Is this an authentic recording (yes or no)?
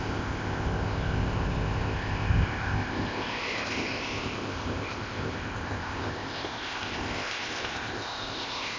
no